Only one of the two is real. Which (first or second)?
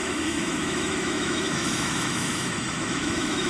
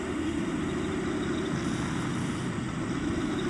second